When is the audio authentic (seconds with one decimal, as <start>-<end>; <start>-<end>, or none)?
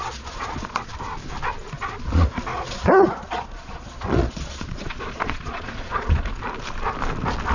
0.9-2.5; 6.3-7.5